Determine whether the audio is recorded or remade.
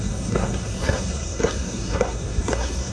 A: remade